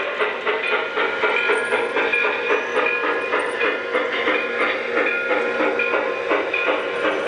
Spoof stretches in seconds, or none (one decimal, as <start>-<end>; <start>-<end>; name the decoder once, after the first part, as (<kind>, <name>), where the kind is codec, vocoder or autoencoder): none

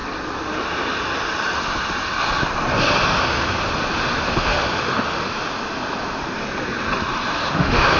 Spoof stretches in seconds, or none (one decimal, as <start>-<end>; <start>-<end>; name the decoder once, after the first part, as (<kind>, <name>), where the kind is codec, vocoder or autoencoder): 3.2-3.6 (autoencoder, DAC-VAE); 4.2-5.3; 7.5-8.0

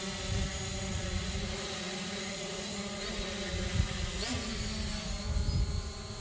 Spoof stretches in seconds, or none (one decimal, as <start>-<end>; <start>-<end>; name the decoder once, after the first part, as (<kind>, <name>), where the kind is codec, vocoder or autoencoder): 0.9-4.6 (vocoder, Vocos)

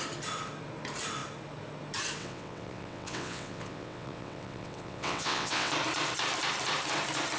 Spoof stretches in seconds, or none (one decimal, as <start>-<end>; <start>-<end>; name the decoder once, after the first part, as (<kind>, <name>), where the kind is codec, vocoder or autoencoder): 2.2-5.7 (vocoder, WaveNeXt)

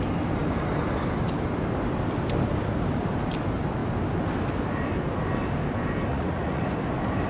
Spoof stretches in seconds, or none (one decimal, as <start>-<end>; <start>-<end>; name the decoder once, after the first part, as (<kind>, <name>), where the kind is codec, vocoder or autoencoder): 6.1-6.6 (vocoder, Vocos)

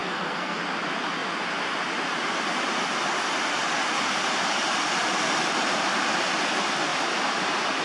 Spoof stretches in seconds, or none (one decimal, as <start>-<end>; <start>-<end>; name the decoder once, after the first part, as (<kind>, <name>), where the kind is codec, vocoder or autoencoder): 0.0-0.6 (codec, SNAC)

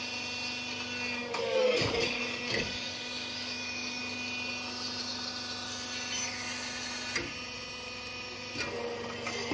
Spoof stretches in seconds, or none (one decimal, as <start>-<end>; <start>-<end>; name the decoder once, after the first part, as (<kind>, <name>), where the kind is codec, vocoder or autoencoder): 1.2-4.0 (codec, DAC)